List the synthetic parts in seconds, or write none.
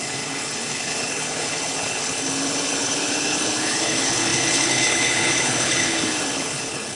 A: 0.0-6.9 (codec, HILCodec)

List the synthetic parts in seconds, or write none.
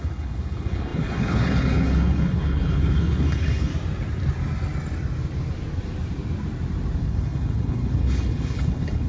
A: 0.0-3.7 (codec, HILCodec); 7.0-9.1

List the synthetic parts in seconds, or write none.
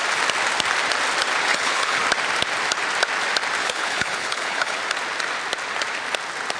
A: 1.5-2.0 (codec, HILCodec); 3.6-4.8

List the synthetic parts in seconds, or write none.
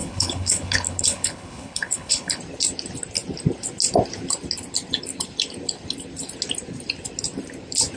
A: 0.0-2.4 (codec, HILCodec)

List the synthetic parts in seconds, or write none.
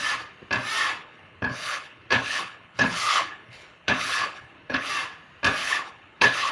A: 1.0-4.9 (codec, HILCodec); 5.6-6.5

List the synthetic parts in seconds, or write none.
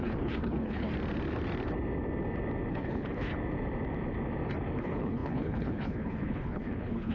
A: 0.0-0.9 (codec, HILCodec); 2.7-3.3; 4.8-7.1